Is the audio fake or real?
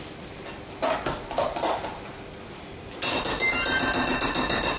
real